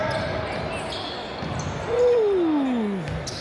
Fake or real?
real